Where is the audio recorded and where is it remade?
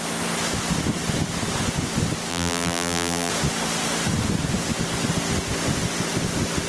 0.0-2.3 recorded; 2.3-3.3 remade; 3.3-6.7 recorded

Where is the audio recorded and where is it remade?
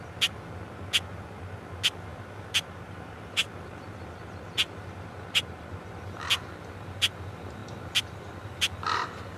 0.0-9.4 recorded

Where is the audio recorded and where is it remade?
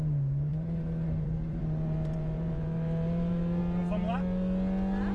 0.0-0.5 recorded; 0.5-3.6 remade; 3.6-5.1 recorded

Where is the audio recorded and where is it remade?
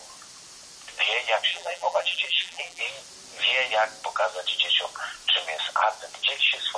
0.0-1.5 recorded; 1.5-2.8 remade; 2.8-6.8 recorded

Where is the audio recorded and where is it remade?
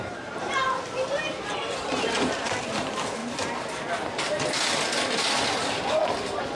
0.0-3.2 remade; 3.2-6.6 recorded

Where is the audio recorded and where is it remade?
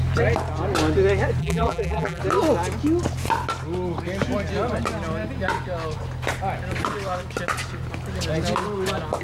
0.0-1.4 recorded; 1.4-2.2 remade; 2.2-9.2 recorded